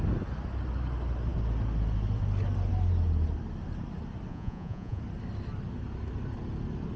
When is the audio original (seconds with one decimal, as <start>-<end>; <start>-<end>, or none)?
0.0-4.3; 5.0-7.0